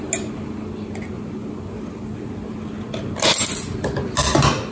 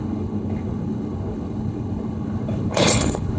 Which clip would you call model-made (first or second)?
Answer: second